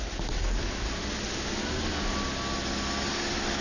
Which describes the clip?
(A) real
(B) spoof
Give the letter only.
A